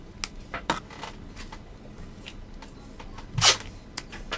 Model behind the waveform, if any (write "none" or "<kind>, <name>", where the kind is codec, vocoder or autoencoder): none